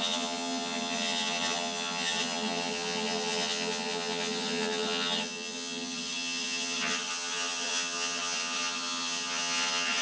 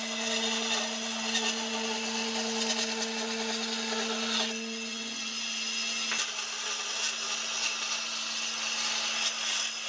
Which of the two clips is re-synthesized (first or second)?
first